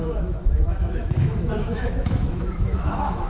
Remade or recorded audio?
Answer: remade